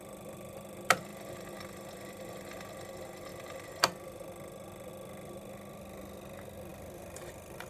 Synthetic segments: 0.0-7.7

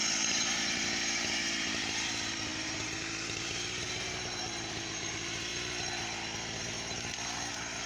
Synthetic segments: 0.0-5.5; 7.5-7.9